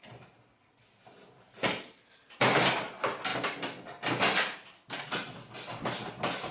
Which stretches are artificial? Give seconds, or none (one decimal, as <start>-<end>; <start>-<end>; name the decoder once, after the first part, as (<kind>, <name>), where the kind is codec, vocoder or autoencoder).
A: none